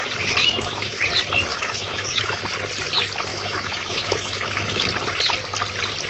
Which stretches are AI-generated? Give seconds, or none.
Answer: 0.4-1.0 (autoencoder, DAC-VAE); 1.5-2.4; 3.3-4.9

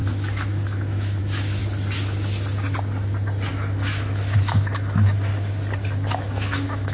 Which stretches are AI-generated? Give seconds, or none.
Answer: 0.0-1.6 (autoencoder, DAC-VAE); 3.5-5.3; 6.1-6.9

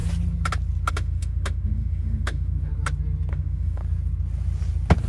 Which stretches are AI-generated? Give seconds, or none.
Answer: 0.9-2.7 (autoencoder, DAC-VAE); 3.3-3.8

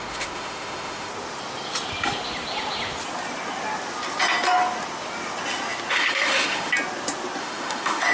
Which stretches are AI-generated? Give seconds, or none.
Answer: 0.0-1.1 (autoencoder, DAC-VAE); 5.9-6.7; 7.4-8.1

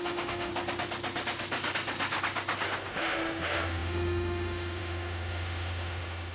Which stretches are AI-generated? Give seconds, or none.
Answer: 0.0-0.5 (autoencoder, DAC-VAE); 2.9-6.3

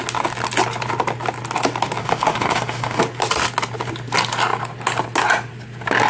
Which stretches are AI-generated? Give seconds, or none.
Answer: 2.0-3.0 (autoencoder, DAC-VAE)